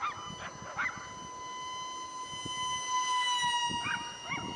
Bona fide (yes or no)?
yes